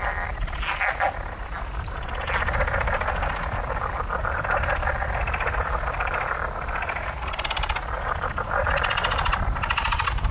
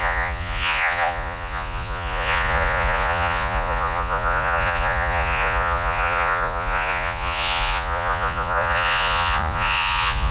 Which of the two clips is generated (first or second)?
second